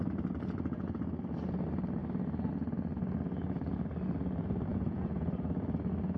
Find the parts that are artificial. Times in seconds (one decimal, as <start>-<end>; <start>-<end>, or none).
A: 4.7-5.3